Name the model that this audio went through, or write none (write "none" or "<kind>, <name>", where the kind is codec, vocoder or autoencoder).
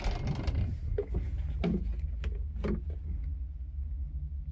none